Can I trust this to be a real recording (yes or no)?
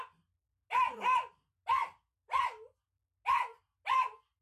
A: yes